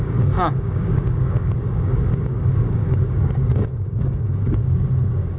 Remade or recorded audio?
remade